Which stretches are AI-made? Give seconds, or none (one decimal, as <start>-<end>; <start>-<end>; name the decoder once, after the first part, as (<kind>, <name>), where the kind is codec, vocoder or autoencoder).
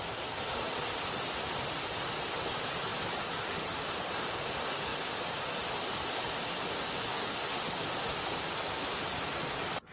none